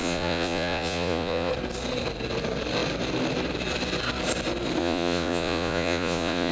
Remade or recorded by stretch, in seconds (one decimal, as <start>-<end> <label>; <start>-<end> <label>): 0.0-1.5 remade; 1.5-4.8 recorded; 4.8-6.5 remade